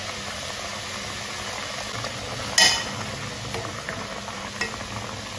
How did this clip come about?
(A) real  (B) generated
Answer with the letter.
A